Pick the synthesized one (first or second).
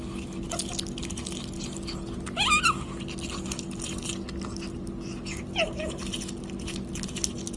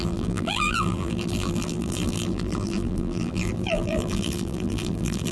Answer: second